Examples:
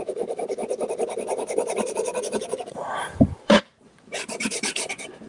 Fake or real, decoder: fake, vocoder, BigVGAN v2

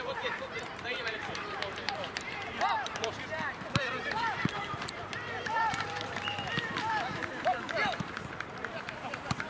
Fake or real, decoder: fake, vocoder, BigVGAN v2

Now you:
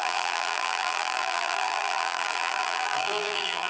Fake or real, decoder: fake, vocoder, BigVGAN v2